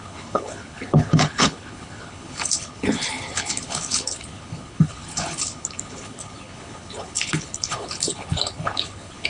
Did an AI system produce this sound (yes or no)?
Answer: yes